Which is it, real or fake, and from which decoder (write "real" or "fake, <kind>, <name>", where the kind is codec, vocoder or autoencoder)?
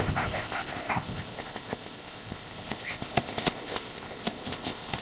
fake, codec, ZipCodec